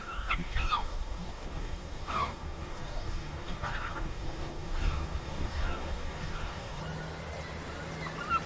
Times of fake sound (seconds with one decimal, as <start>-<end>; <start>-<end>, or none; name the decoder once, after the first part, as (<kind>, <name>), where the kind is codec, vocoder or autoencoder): 0.0-6.8 (codec, DAC)